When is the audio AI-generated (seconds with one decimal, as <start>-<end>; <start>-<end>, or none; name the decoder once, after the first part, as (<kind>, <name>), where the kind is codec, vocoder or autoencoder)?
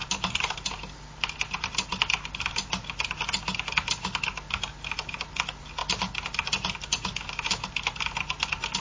none